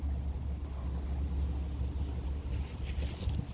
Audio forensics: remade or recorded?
recorded